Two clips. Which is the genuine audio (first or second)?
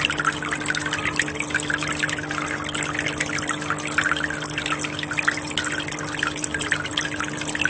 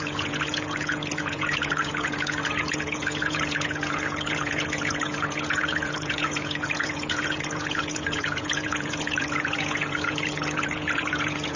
first